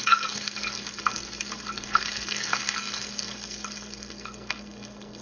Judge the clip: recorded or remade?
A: remade